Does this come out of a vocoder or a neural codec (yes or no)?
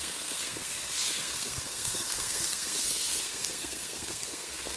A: yes